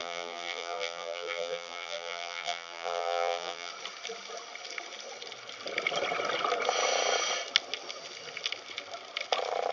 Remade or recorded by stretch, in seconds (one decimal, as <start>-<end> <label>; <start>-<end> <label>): 0.0-3.7 remade; 3.7-9.7 recorded